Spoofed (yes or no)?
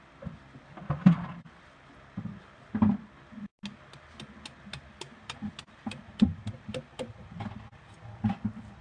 no